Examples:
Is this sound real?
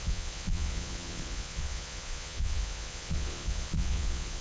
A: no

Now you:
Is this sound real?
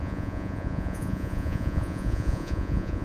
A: no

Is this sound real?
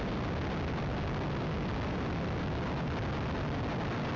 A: yes